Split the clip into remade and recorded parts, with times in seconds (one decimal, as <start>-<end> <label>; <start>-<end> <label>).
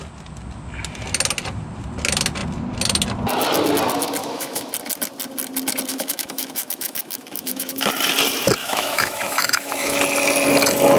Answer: 0.0-4.2 recorded; 4.2-4.7 remade; 4.7-5.9 recorded; 5.9-7.9 remade; 7.9-8.6 recorded; 8.6-10.0 remade; 10.0-11.0 recorded